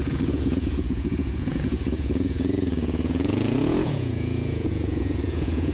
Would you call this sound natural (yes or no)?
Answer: no